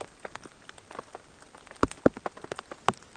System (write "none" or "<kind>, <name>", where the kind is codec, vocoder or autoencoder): none